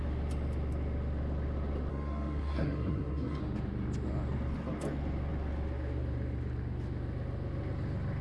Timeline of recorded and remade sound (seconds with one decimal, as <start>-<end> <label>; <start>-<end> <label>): 0.0-1.9 recorded; 1.9-3.4 remade; 3.4-8.2 recorded